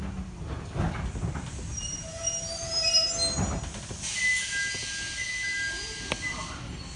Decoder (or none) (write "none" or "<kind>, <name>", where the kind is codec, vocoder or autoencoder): none